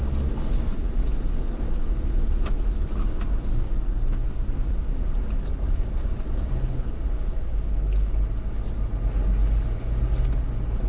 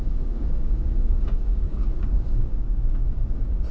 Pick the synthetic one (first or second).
second